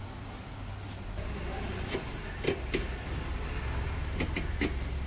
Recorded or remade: recorded